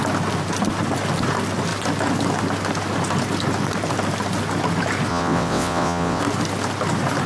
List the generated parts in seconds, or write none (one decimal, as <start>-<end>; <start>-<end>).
5.1-6.2